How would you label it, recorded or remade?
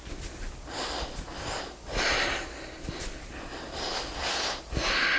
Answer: recorded